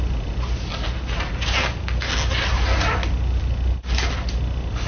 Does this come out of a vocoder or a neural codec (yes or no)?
no